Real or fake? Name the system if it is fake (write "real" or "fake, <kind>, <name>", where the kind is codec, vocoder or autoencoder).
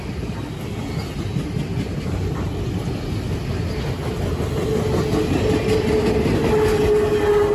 real